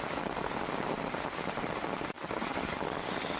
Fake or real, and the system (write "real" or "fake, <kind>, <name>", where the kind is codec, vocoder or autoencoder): real